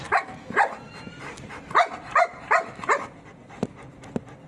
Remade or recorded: recorded